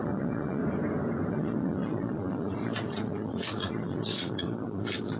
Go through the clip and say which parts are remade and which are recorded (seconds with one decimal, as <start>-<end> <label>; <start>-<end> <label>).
0.0-0.6 remade; 0.6-1.3 recorded; 1.3-5.2 remade